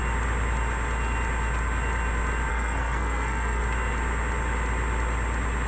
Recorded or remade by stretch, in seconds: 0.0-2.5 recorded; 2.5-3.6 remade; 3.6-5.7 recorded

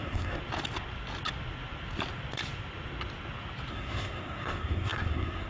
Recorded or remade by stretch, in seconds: 0.0-0.4 remade; 0.4-3.7 recorded; 3.7-5.5 remade